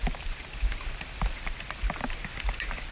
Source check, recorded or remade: recorded